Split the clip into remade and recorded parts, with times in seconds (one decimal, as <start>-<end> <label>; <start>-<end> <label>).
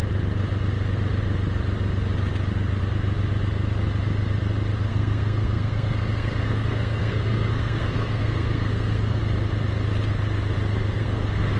0.0-4.9 recorded; 4.9-9.2 remade; 9.2-11.0 recorded; 11.0-11.6 remade